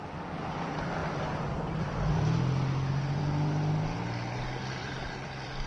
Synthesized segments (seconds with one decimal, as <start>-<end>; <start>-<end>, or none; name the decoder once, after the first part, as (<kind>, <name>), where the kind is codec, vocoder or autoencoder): 4.8-5.7 (vocoder, BigVGAN v2)